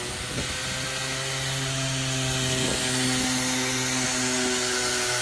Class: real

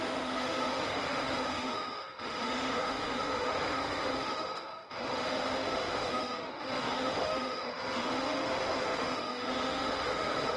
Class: fake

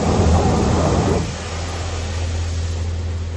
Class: real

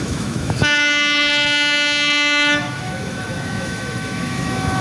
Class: fake